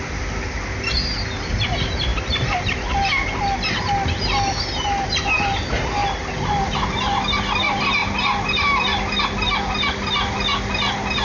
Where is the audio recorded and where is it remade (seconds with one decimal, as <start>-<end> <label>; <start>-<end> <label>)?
0.0-11.2 recorded